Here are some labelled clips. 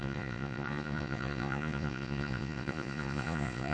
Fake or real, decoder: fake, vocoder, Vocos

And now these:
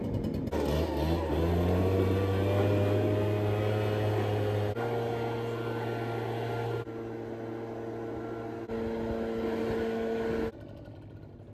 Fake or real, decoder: real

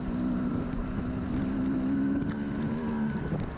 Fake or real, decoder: real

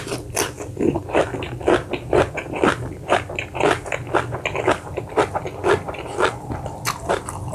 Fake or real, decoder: real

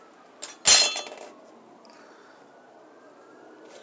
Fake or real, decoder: real